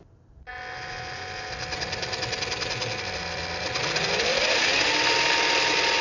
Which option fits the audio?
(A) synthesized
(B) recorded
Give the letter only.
B